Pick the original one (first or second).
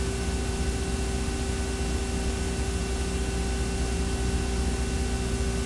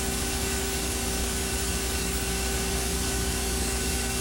first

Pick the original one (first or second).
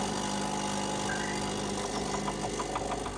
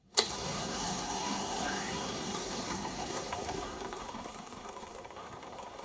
first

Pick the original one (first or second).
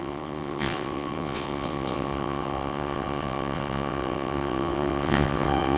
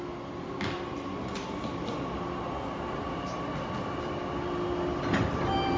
second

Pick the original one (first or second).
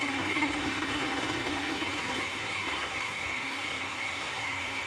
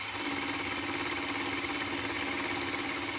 second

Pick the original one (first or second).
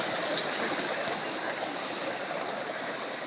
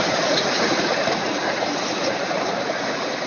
first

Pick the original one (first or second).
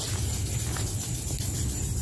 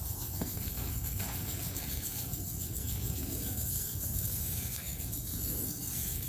first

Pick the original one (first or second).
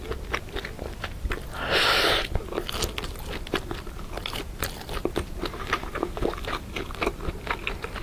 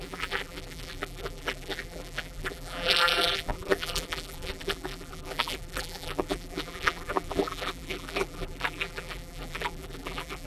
first